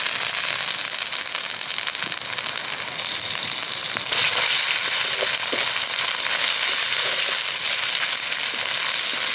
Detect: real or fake real